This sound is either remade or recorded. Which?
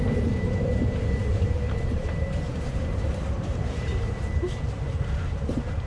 remade